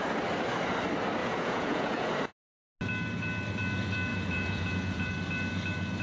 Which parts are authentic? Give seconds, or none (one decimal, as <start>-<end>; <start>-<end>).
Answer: 0.0-1.2; 2.1-4.1; 5.1-6.0